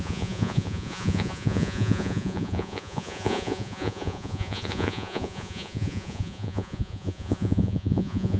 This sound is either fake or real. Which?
fake